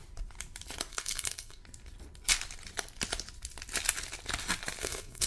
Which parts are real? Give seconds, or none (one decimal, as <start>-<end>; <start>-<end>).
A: 0.0-0.9; 1.6-4.8